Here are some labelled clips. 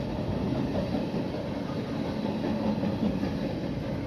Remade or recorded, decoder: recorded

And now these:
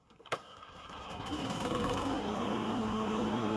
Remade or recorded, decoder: remade, codec, SNAC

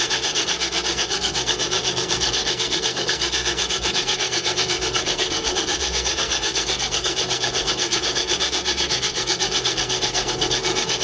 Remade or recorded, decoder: remade, codec, SNAC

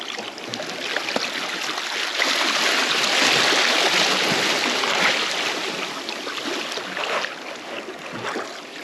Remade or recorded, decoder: recorded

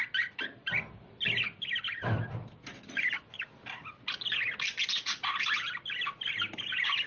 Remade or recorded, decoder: recorded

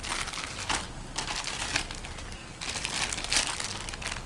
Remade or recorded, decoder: recorded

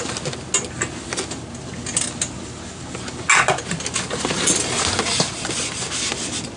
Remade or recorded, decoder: recorded